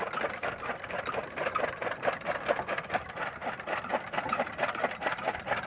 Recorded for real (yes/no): yes